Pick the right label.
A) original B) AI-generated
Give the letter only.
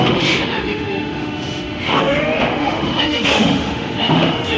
B